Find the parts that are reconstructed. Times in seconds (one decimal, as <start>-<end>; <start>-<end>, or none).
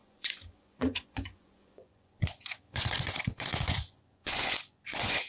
0.0-5.3